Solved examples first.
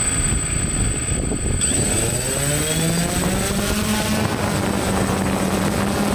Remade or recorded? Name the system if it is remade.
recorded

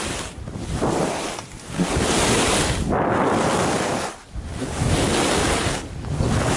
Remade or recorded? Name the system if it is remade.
recorded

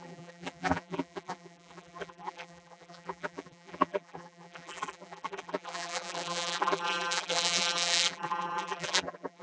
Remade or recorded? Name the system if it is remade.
remade, vocoder, BigVGAN v2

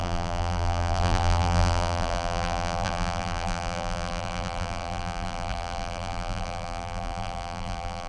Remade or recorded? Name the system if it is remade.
remade, vocoder, BigVGAN v2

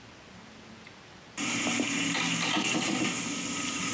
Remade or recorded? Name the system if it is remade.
recorded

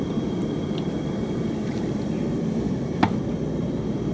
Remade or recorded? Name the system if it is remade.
remade, vocoder, BigVGAN v2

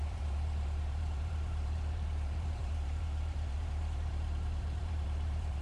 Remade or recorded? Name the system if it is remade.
remade, vocoder, BigVGAN v2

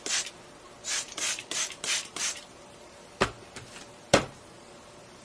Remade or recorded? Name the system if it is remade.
remade, vocoder, BigVGAN v2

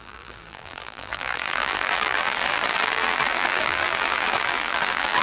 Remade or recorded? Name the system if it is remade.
remade, vocoder, BigVGAN v2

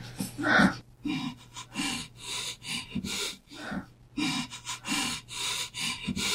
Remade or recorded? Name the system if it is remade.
recorded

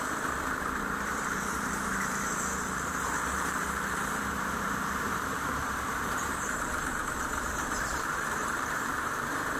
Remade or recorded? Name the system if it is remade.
remade, vocoder, BigVGAN v2